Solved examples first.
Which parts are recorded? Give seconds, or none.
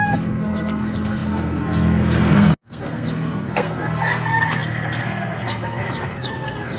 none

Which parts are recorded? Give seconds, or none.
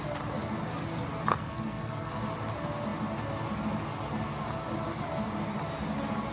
0.0-1.3; 2.1-6.3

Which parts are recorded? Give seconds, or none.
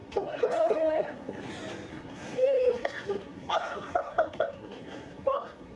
1.5-1.9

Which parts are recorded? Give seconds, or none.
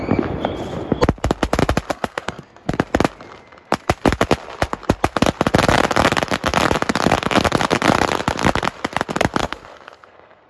0.0-1.9; 2.7-9.4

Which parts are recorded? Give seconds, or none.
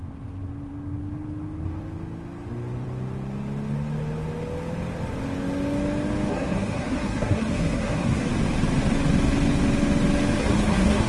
0.0-6.3; 8.3-10.4